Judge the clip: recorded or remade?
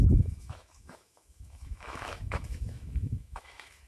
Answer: remade